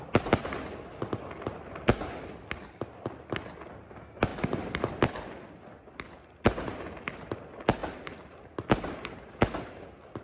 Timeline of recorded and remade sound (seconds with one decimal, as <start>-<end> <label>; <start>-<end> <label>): 0.0-7.8 recorded; 7.8-8.5 remade; 8.5-10.2 recorded